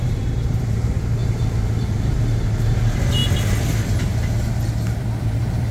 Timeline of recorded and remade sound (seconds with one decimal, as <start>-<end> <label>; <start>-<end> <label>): 0.0-3.2 remade; 3.2-5.2 recorded; 5.2-5.7 remade